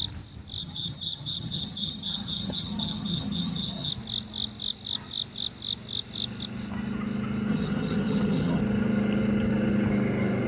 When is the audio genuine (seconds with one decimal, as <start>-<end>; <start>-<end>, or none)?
0.0-0.6; 3.9-7.5; 8.6-10.5